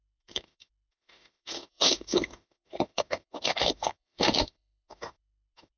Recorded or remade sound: remade